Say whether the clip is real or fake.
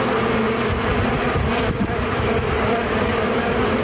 real